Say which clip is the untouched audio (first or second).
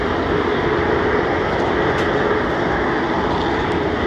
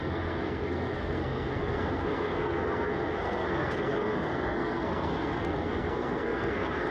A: first